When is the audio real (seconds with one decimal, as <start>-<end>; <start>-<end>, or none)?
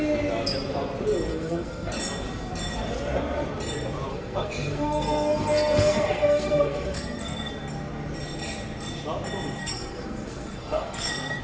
0.0-1.3; 1.9-4.1; 7.5-9.6